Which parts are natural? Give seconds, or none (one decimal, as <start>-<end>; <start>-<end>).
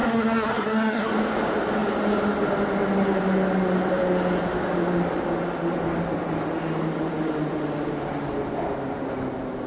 1.1-9.7